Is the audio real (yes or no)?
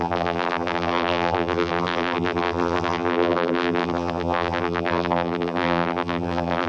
no